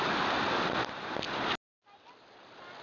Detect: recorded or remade recorded